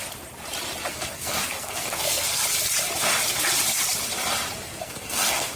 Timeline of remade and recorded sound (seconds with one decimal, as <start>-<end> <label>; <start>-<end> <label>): 0.0-0.9 recorded; 0.9-2.4 remade; 2.4-4.8 recorded; 4.8-5.6 remade